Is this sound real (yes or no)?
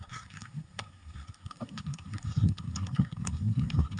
no